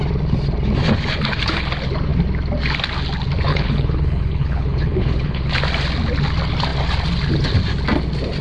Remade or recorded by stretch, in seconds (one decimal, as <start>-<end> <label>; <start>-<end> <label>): 0.0-3.5 recorded; 3.5-5.5 remade; 5.5-8.4 recorded

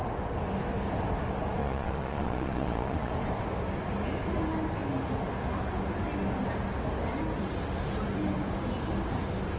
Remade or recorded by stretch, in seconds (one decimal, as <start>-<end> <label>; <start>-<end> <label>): 0.0-1.6 recorded; 1.6-3.1 remade; 3.1-9.6 recorded

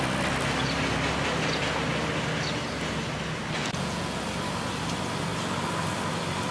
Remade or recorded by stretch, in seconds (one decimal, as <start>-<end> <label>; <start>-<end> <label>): 0.0-3.6 recorded; 3.6-4.2 remade; 4.2-6.5 recorded

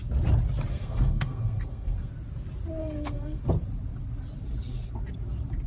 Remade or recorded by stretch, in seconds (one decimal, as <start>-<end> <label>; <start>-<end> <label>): 0.0-0.7 recorded; 0.7-2.1 remade; 2.1-2.8 recorded; 2.8-3.4 remade; 3.4-5.7 recorded

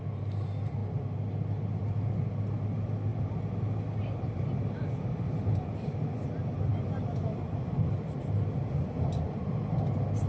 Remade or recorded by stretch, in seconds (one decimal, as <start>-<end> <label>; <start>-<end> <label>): 0.0-10.3 recorded

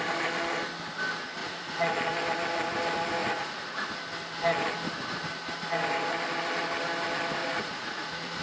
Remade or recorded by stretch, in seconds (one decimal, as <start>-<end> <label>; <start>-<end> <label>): 0.0-1.4 recorded; 1.4-1.9 remade; 1.9-3.2 recorded; 3.2-3.9 remade; 3.9-7.4 recorded; 7.4-8.4 remade

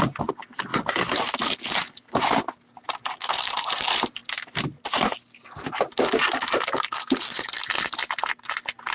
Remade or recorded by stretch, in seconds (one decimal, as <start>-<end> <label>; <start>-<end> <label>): 0.0-8.9 recorded